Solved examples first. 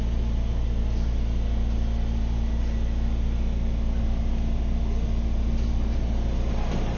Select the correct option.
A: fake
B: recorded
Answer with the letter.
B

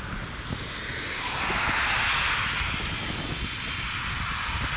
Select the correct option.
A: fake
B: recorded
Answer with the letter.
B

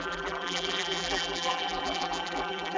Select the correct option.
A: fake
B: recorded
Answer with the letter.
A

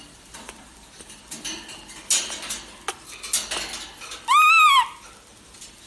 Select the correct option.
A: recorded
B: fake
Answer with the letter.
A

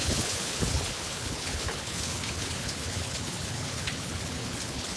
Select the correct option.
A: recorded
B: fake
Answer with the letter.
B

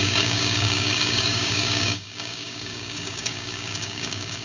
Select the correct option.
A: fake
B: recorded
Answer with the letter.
A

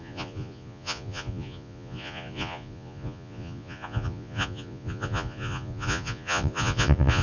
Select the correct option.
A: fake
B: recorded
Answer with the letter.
A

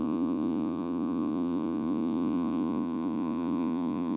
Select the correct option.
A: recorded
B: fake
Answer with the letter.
B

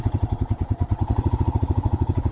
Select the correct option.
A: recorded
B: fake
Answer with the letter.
B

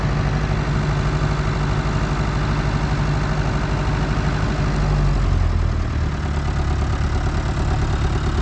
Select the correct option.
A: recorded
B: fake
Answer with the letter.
A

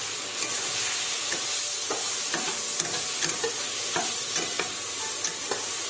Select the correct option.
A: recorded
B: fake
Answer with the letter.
A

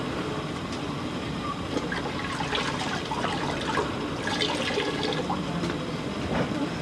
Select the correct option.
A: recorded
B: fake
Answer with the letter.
A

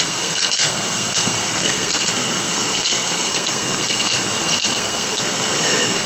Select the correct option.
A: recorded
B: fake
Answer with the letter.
B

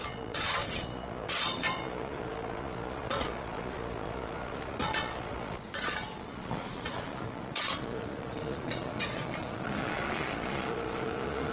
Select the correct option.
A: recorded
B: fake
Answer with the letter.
B